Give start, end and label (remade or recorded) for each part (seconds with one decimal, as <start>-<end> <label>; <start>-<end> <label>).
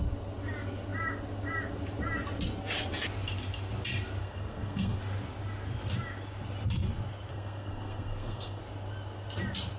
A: 0.0-4.2 recorded; 4.2-5.0 remade; 5.0-7.3 recorded; 7.3-8.6 remade; 8.6-9.8 recorded